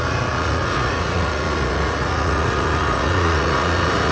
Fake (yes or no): yes